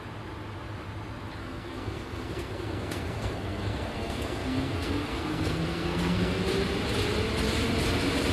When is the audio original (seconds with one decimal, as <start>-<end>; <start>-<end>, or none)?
0.0-1.4; 6.4-8.3